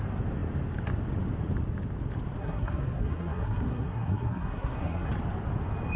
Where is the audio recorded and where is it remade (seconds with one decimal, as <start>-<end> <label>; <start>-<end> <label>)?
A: 0.0-2.4 recorded; 2.4-5.1 remade; 5.1-6.0 recorded